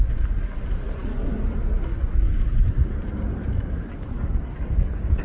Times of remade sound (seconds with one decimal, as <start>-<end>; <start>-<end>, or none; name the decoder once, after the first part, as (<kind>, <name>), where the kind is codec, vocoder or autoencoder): none